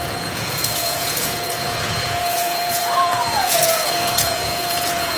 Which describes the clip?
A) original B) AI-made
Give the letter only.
B